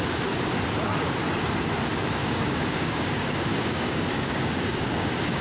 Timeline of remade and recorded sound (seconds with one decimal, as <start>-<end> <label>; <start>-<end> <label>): 0.0-2.2 recorded; 2.2-5.4 remade